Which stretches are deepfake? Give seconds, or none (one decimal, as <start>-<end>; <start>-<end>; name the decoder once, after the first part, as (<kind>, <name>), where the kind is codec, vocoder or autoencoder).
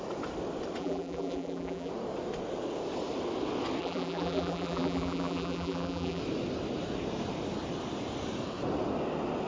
0.8-1.9 (vocoder, BigVGAN v2); 3.8-6.2